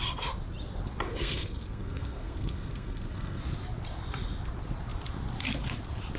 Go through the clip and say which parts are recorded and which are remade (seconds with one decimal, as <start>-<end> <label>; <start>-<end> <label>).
0.0-1.2 recorded; 1.2-3.4 remade; 3.4-6.2 recorded